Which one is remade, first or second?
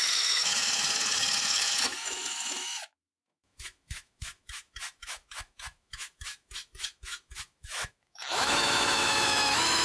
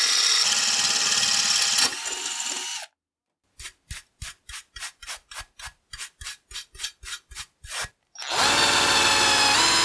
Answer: first